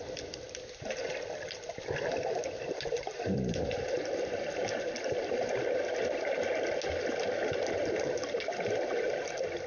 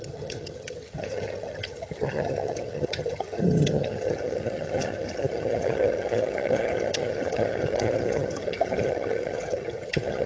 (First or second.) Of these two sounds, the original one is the first